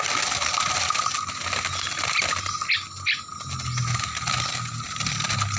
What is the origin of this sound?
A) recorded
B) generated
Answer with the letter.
A